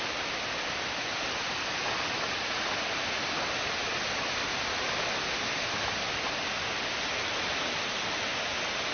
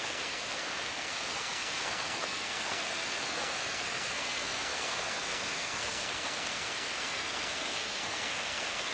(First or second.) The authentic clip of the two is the first